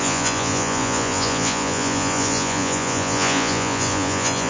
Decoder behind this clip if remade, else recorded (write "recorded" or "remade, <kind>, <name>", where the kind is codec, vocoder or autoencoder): remade, vocoder, Vocos